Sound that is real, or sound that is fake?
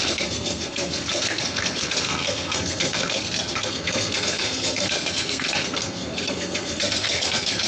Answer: fake